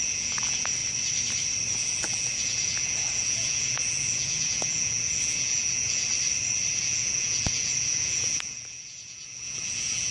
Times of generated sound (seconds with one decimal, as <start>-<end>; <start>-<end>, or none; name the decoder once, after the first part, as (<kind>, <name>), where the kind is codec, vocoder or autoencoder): 0.0-0.8 (vocoder, Vocos); 1.7-6.1; 6.8-10.1